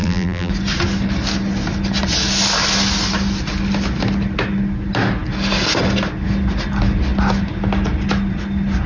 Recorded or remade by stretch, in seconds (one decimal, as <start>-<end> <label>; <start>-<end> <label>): 0.0-0.5 remade; 0.5-8.9 recorded